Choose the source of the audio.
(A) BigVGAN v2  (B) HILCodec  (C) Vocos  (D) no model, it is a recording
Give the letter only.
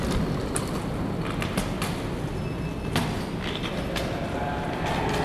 D